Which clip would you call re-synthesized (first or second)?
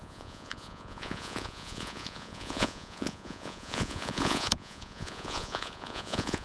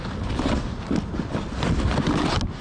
first